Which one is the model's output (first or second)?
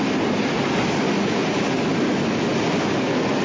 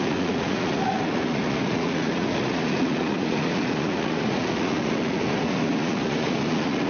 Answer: second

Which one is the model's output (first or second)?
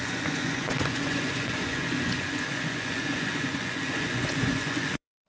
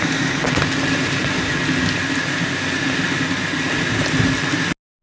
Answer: first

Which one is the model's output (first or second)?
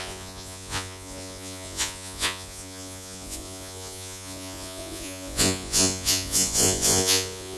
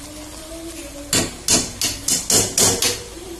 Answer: first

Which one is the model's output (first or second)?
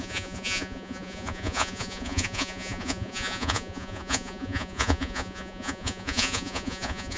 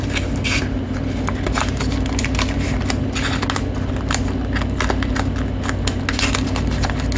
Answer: first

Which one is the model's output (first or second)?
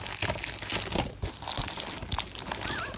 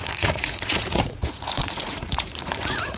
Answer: second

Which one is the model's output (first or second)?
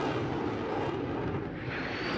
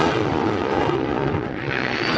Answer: second